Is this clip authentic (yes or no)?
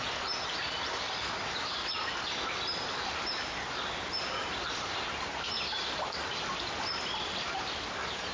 yes